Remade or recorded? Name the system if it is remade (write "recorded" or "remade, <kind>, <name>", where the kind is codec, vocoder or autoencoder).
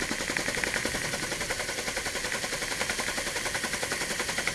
recorded